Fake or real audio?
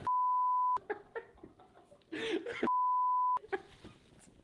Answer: real